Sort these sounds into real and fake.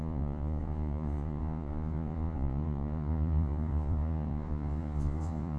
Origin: fake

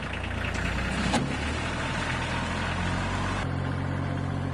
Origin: real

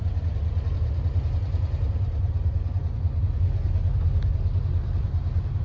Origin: real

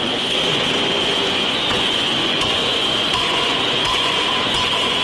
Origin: fake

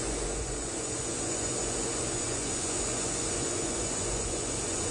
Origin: fake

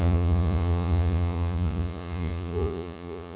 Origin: fake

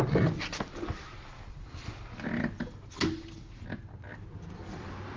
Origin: real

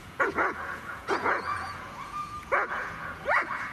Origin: fake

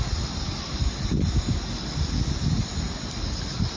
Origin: real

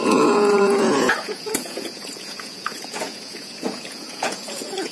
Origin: fake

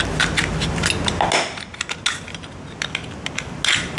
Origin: real